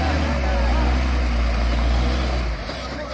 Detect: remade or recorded recorded